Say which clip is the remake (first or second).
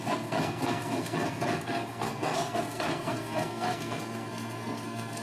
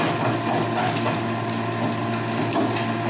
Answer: first